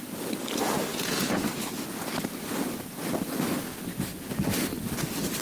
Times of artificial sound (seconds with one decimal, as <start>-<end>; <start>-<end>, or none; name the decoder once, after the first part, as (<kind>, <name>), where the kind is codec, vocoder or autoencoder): 0.9-1.5 (vocoder, Vocos)